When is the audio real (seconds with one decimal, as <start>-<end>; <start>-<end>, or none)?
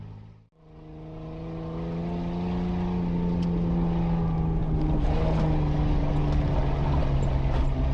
0.0-7.9